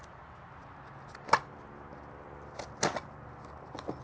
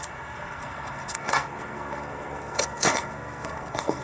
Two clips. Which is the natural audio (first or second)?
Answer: first